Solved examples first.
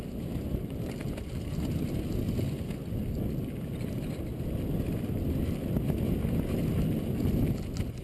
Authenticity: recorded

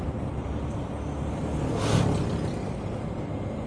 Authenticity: recorded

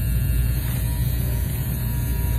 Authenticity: recorded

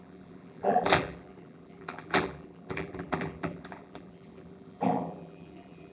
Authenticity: remade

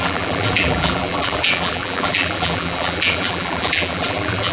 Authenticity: remade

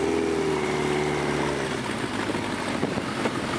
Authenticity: recorded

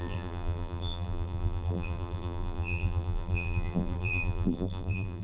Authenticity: remade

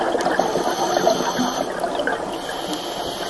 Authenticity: recorded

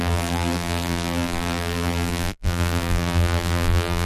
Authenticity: remade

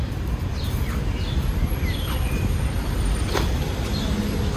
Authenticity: recorded